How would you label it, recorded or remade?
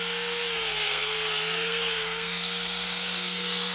remade